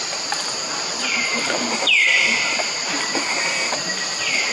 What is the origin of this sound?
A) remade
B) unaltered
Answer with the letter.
A